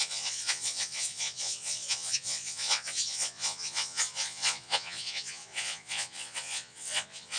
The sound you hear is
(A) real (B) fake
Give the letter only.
B